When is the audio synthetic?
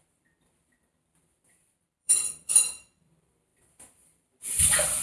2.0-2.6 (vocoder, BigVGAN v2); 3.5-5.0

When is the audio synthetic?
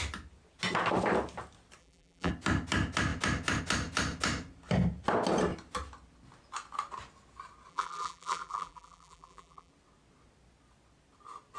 1.8-2.3 (vocoder, BigVGAN v2); 7.7-9.7